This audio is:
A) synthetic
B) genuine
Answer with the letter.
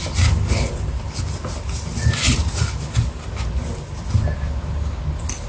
B